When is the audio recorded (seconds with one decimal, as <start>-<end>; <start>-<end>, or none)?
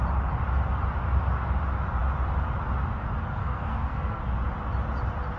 0.0-3.4; 4.2-5.4